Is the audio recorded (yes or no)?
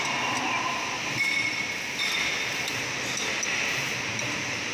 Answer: yes